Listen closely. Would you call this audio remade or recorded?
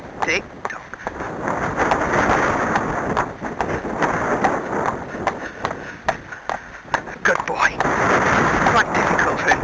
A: recorded